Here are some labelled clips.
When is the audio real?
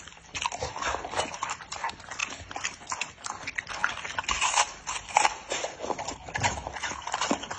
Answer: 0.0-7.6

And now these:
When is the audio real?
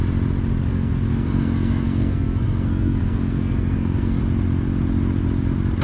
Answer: 0.0-0.7; 4.2-5.8